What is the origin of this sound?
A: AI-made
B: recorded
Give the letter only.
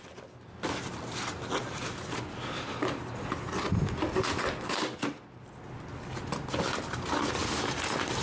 B